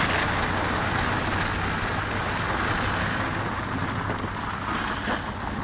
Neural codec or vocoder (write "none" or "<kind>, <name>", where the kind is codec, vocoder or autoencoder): none